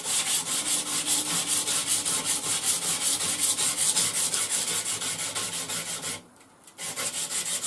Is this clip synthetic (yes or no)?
no